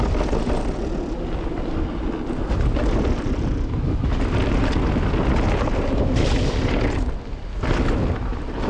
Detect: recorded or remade recorded